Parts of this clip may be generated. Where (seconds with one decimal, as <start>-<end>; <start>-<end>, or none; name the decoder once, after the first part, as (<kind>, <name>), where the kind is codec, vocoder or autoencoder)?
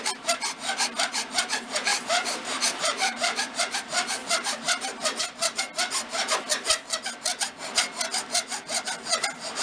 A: 1.9-3.8 (vocoder, BigVGAN v2); 4.2-5.6